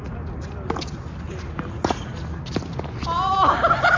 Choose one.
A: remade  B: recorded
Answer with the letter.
B